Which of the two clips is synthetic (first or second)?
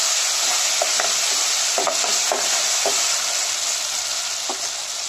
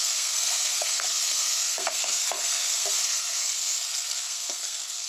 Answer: second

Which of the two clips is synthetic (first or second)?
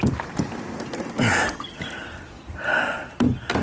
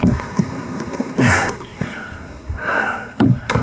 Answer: second